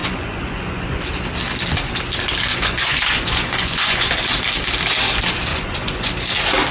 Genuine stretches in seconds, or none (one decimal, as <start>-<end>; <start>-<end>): 1.0-2.5; 4.1-5.5; 6.1-6.7